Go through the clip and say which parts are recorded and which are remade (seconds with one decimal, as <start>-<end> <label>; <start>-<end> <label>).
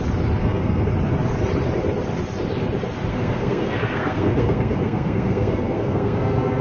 0.0-0.4 recorded; 0.4-0.9 remade; 0.9-3.1 recorded; 3.1-6.6 remade